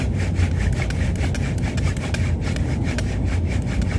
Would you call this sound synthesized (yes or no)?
no